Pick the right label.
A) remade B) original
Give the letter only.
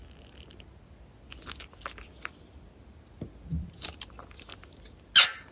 B